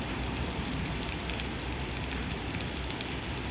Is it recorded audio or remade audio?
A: remade